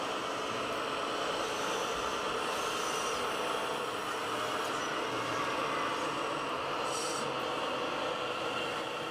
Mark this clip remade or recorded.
recorded